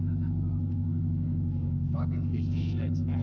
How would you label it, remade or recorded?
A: remade